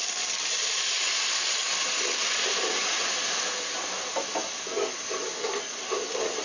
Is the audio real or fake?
real